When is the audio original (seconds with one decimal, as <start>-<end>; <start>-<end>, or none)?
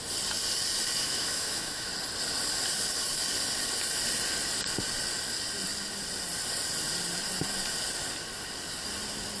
0.0-1.0; 1.9-9.4